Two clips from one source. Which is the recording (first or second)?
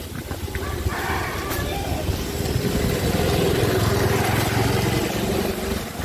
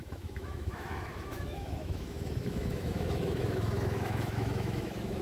first